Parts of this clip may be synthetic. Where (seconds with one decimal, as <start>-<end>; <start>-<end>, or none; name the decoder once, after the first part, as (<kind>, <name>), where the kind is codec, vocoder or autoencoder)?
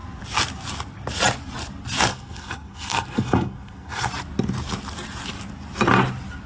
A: 2.1-4.1 (codec, SNAC)